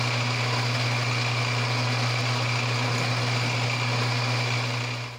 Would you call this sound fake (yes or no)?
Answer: no